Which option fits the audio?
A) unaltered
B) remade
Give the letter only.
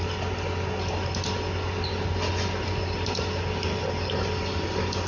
A